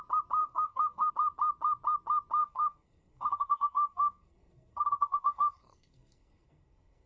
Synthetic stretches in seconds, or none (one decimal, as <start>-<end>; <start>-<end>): 0.4-1.1; 2.4-7.1